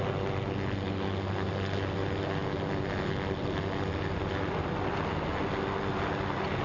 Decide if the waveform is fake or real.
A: real